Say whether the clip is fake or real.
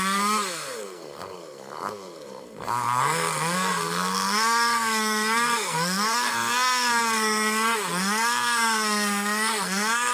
fake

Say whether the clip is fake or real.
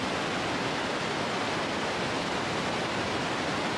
real